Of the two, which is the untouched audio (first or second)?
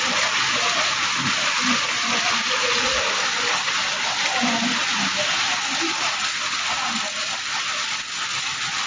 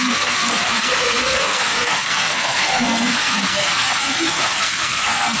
first